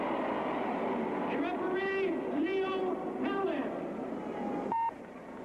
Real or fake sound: real